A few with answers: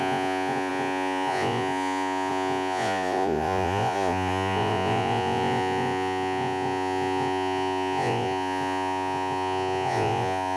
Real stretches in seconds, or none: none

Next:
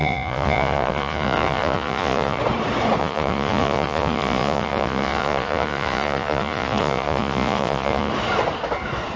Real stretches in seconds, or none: 2.4-3.0; 8.1-9.2

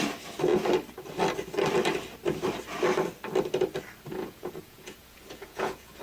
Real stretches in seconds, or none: 0.0-4.1

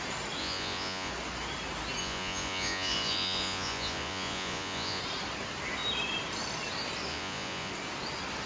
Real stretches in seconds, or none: 0.0-0.4; 1.1-2.0; 5.0-7.1; 7.7-8.5

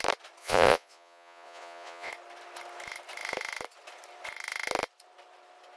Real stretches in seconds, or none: 0.0-0.4; 2.1-5.8

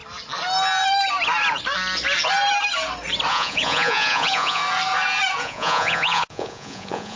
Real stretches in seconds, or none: 0.0-3.3; 4.6-5.4